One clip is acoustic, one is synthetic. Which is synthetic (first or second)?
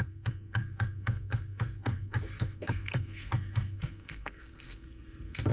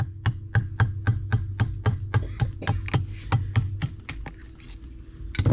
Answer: first